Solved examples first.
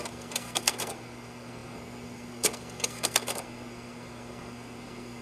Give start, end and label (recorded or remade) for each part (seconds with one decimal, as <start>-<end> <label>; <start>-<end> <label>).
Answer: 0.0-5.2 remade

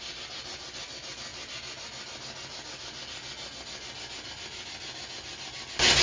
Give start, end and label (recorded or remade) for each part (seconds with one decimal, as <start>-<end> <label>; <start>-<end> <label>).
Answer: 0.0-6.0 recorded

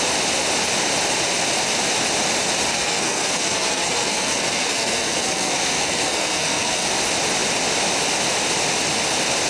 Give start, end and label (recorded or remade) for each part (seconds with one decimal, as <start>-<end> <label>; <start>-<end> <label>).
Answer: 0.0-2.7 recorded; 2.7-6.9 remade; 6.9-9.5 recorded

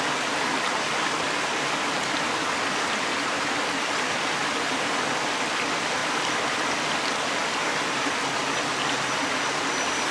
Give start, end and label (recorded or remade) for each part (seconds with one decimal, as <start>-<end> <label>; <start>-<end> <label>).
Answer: 0.0-10.1 recorded

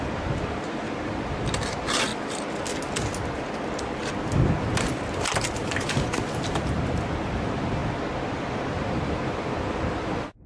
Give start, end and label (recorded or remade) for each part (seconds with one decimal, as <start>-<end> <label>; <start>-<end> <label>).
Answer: 0.0-2.1 remade; 2.1-5.0 recorded; 5.0-7.8 remade; 7.8-8.7 recorded; 8.7-10.5 remade